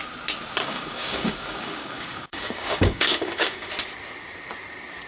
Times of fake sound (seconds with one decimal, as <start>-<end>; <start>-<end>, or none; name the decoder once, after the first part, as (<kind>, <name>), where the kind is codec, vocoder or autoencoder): 0.6-3.7 (codec, DAC)